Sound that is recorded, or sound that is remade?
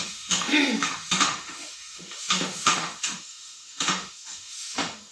remade